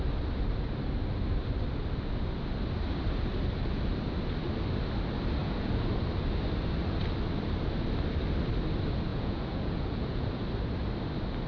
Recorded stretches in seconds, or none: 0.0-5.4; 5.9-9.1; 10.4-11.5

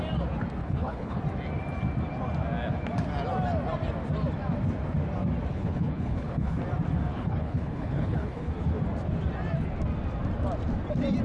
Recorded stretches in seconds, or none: 0.0-0.6; 1.2-5.5; 6.6-7.1; 8.5-11.2

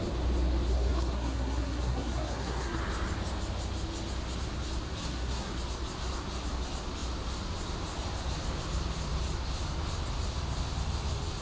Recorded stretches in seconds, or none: 0.0-0.7; 2.8-5.0; 5.6-11.4

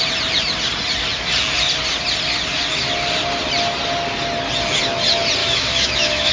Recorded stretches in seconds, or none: 0.0-5.4

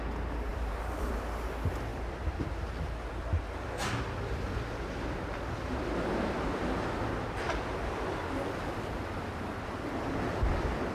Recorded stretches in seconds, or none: 0.0-0.5; 1.1-1.9; 2.5-10.9

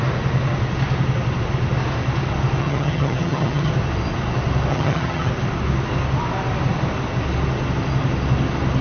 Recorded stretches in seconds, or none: 0.0-2.6; 3.7-4.7; 5.3-8.8

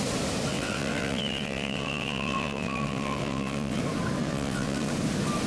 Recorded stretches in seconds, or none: 0.0-0.5; 3.8-4.2; 4.9-5.5